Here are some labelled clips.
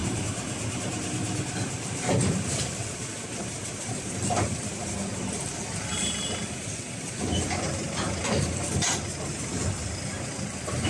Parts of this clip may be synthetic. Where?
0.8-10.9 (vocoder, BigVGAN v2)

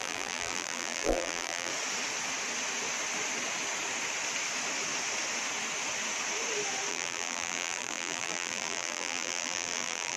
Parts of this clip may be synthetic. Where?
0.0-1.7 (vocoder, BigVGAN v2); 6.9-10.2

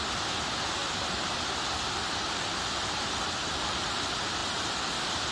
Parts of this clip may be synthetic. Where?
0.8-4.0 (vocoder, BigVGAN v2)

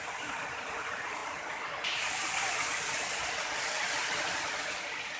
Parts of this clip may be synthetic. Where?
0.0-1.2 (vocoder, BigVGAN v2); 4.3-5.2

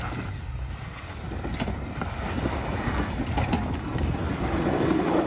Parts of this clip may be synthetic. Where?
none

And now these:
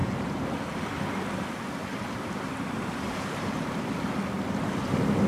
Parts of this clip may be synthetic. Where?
0.0-0.6 (vocoder, BigVGAN v2); 1.8-3.9

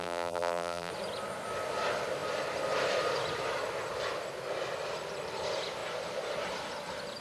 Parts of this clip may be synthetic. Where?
0.0-0.9 (vocoder, BigVGAN v2)

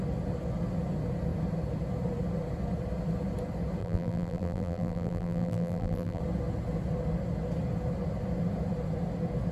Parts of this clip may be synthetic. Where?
3.8-6.2 (vocoder, BigVGAN v2)